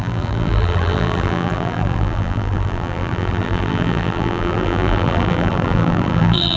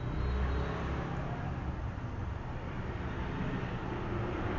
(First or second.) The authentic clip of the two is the second